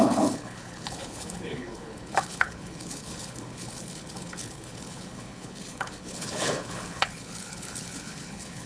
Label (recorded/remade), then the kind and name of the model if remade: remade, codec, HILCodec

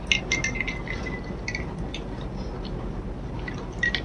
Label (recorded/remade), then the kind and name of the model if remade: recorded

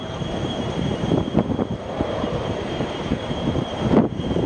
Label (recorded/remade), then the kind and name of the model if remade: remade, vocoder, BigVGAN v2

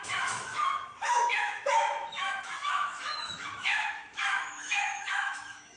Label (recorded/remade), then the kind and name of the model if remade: remade, autoencoder, DAC-VAE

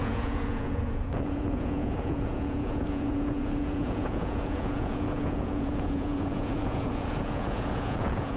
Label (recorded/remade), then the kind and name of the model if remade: remade, vocoder, Vocos